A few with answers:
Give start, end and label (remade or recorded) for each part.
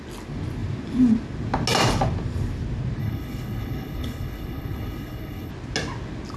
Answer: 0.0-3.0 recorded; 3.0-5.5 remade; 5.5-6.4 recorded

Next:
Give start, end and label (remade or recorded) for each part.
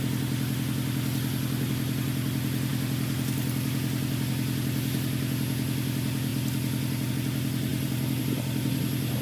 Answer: 0.0-7.7 recorded; 7.7-8.2 remade; 8.2-9.2 recorded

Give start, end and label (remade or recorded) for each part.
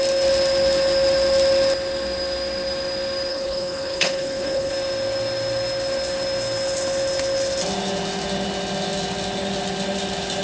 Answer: 0.0-3.3 recorded; 3.3-4.7 remade; 4.7-10.4 recorded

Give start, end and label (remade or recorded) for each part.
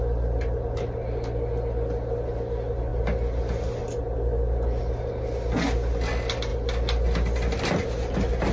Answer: 0.0-8.5 recorded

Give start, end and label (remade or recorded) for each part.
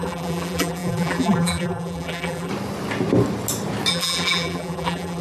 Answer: 0.0-2.5 remade; 2.5-3.9 recorded; 3.9-5.2 remade